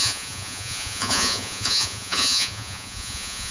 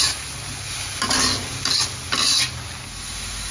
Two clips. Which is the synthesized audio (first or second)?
first